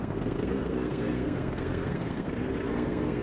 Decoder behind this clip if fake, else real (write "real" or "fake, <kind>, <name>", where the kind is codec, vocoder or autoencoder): fake, codec, SNAC